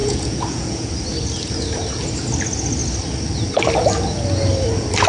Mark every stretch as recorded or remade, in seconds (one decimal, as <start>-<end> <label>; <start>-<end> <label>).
0.0-0.9 remade; 0.9-5.1 recorded